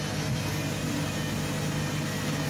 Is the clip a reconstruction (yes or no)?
no